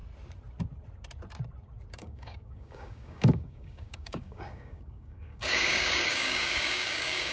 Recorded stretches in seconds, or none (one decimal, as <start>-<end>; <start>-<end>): 0.0-1.9